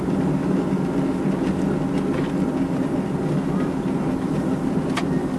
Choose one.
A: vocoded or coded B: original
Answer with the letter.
B